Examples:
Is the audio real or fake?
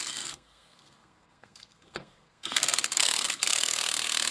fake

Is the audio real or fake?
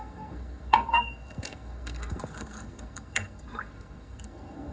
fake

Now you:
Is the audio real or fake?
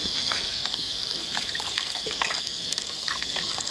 fake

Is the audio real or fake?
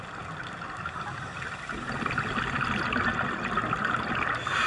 real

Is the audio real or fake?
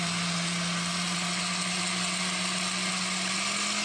real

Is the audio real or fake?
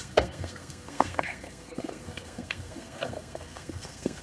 fake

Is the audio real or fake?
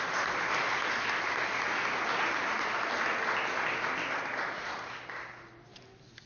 real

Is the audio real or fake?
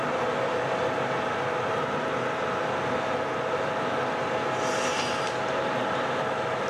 real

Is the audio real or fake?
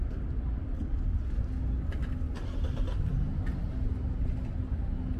real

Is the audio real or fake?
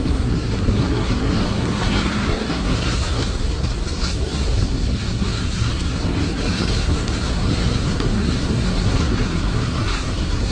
fake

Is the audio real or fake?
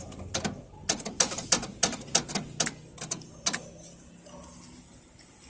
real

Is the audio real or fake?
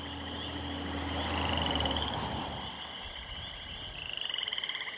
real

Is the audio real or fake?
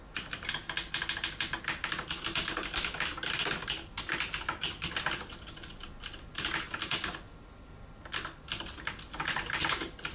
real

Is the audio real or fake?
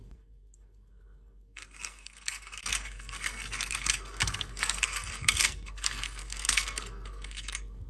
fake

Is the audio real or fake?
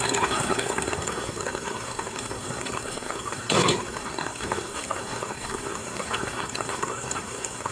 fake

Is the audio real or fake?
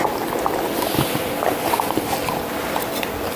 real